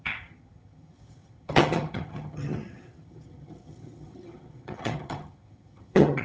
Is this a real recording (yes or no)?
no